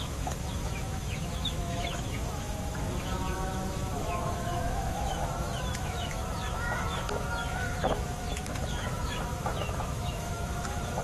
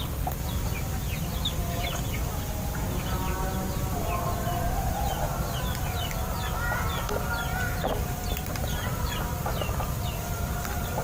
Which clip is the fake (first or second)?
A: first